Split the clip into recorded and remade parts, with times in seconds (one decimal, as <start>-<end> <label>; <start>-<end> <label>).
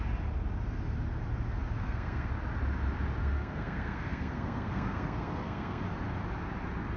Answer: 0.0-1.8 recorded; 1.8-2.3 remade; 2.3-3.2 recorded; 3.2-5.8 remade; 5.8-7.0 recorded